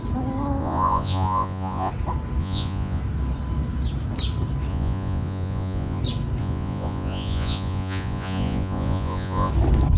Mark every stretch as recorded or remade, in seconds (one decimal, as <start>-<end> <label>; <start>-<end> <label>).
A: 0.0-0.6 recorded; 0.6-1.9 remade; 1.9-2.4 recorded; 2.4-3.0 remade; 3.0-4.7 recorded; 4.7-6.0 remade; 6.0-6.4 recorded; 6.4-9.5 remade; 9.5-10.0 recorded